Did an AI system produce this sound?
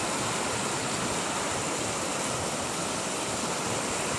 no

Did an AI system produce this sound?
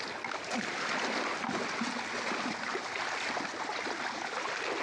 no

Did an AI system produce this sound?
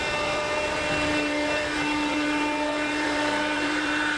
yes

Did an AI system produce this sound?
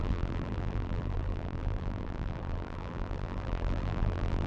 yes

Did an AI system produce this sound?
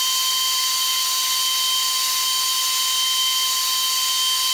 no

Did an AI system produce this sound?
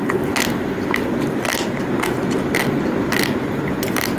no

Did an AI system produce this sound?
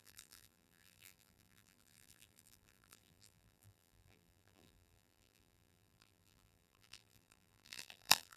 yes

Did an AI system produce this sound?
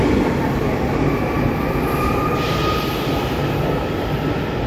no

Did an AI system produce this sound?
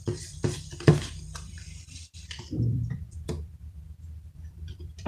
yes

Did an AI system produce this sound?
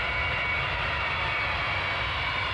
no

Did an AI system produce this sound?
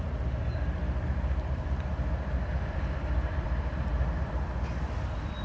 yes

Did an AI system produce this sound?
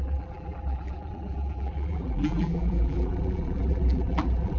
yes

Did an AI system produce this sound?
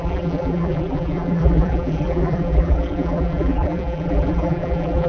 yes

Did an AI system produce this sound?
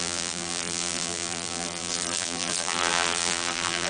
yes